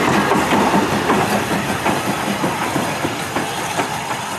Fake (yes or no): no